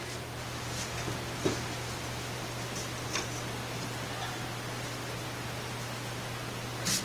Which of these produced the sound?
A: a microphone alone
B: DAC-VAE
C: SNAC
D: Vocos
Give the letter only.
A